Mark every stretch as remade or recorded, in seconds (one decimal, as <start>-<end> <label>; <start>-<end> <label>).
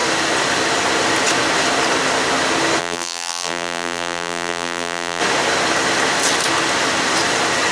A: 0.0-2.8 recorded; 2.8-5.2 remade; 5.2-7.7 recorded